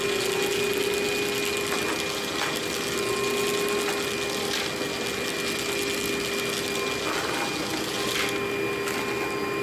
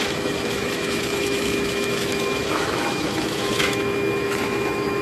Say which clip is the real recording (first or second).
first